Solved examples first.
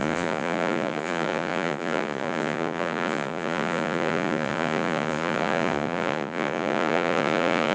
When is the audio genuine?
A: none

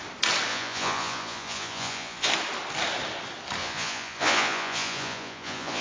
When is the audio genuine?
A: 0.0-0.5; 2.3-3.6

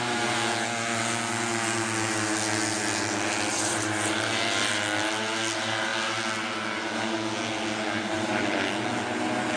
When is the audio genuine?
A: 0.0-3.5; 4.1-9.6